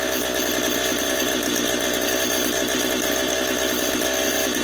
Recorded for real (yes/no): yes